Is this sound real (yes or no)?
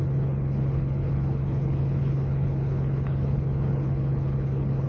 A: no